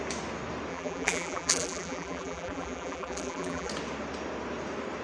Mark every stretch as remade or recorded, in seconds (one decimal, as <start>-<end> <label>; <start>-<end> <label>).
0.0-0.7 recorded; 0.7-3.7 remade; 3.7-5.0 recorded